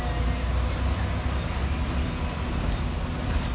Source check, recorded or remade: recorded